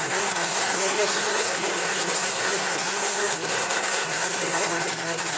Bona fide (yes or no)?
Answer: no